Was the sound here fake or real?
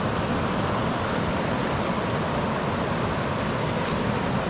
real